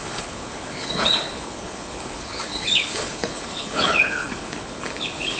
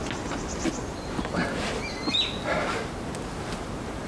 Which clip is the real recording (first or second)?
second